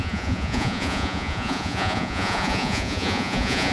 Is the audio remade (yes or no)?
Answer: yes